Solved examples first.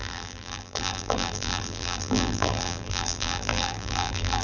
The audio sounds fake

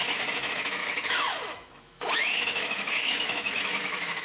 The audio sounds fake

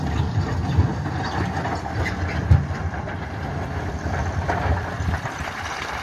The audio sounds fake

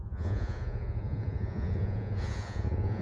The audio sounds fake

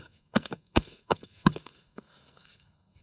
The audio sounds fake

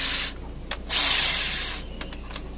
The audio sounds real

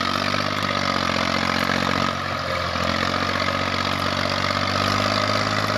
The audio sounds real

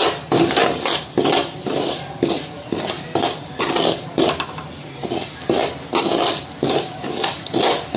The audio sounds real